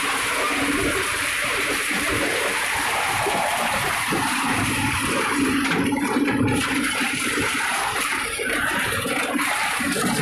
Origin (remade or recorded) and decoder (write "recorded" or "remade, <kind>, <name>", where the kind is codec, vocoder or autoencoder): remade, vocoder, BigVGAN v2